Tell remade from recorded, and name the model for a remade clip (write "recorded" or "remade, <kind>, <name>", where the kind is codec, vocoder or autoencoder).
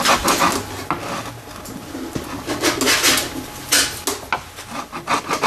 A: recorded